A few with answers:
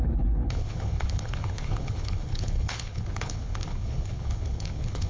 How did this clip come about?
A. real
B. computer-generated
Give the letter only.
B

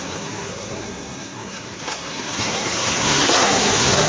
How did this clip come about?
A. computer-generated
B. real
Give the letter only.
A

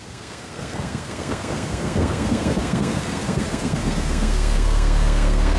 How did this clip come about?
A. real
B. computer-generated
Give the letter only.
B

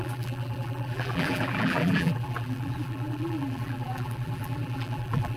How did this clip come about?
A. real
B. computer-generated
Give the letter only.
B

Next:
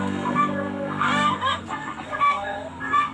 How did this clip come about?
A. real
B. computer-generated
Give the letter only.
B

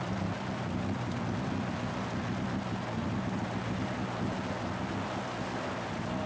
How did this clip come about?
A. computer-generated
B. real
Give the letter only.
B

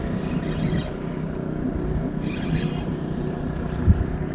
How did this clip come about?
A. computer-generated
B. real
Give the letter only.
A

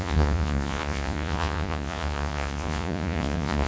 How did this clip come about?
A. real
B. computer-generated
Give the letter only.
B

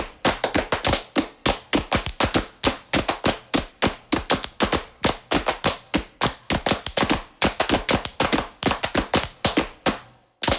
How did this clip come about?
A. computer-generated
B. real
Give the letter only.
B